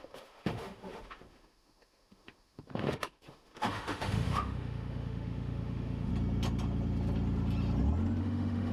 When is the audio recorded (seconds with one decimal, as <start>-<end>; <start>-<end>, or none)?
6.1-8.2